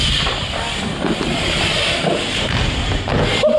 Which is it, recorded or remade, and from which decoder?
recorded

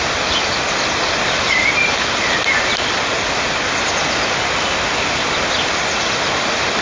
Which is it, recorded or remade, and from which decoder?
recorded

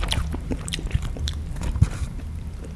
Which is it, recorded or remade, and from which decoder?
remade, vocoder, BigVGAN v2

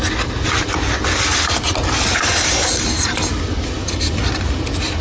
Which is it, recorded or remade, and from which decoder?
recorded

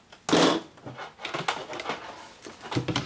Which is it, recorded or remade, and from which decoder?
recorded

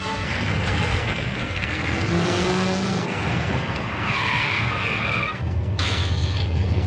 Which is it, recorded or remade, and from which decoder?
remade, codec, SNAC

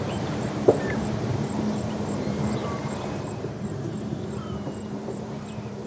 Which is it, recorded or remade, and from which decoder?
remade, vocoder, BigVGAN v2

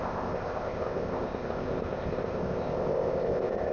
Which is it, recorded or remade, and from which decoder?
remade, codec, ZipCodec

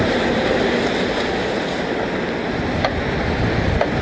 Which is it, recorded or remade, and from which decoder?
recorded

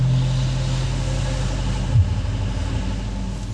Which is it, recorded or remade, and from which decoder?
recorded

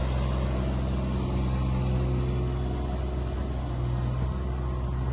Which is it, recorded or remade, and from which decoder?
recorded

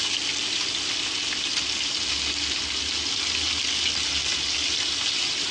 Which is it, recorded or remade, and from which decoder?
recorded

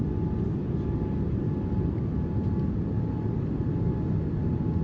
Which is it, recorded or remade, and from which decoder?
recorded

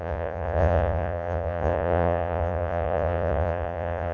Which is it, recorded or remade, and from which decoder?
remade, vocoder, Vocos